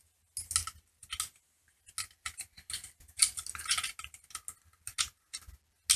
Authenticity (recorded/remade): recorded